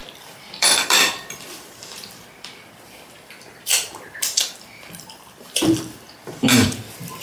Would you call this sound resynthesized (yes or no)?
yes